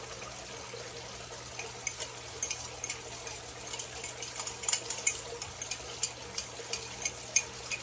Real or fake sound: real